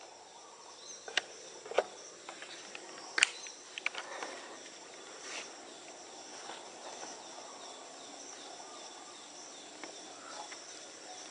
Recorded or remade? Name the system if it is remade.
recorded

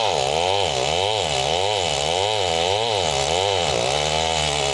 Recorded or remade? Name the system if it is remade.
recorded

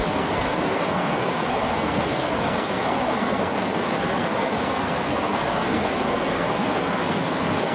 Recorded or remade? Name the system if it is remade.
remade, codec, SNAC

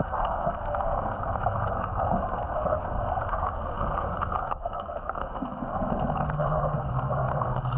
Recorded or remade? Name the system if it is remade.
remade, codec, SNAC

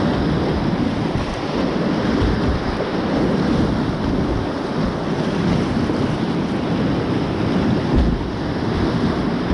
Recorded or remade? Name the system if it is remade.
recorded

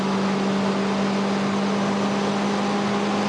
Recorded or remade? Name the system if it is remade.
recorded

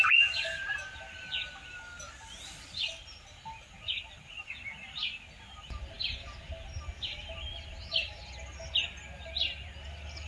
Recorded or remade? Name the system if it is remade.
recorded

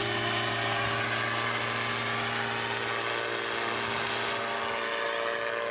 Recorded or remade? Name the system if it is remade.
recorded